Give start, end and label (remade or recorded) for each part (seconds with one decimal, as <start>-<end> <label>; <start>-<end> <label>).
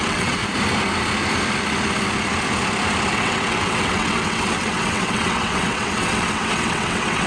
0.0-0.4 remade; 0.4-3.1 recorded; 3.1-7.3 remade